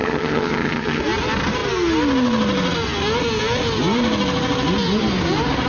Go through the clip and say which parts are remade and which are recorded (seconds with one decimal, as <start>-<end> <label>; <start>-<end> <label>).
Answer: 0.0-1.0 remade; 1.0-5.7 recorded